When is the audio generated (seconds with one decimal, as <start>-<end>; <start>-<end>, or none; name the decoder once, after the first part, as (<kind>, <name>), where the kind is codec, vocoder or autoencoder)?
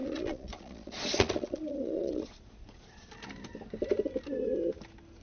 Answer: 0.0-3.1 (vocoder, Vocos)